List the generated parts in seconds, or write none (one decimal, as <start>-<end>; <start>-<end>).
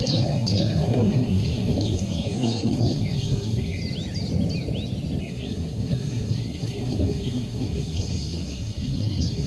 0.0-3.8; 5.2-9.5